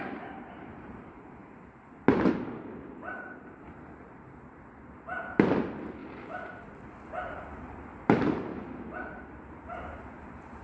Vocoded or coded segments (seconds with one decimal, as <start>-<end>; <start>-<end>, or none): 0.0-1.4; 2.3-8.5; 9.5-10.6